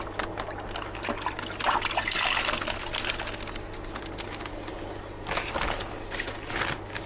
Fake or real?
real